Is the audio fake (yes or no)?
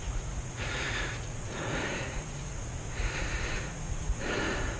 yes